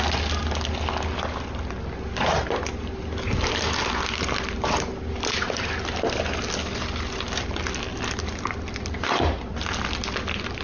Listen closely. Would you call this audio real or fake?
real